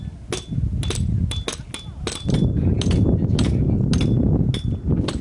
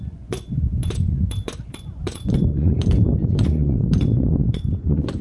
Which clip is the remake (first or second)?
second